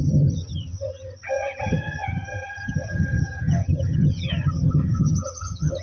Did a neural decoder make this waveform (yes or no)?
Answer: yes